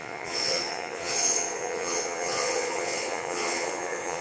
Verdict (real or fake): fake